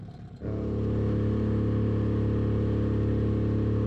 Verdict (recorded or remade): recorded